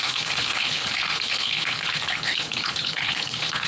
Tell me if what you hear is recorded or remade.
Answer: remade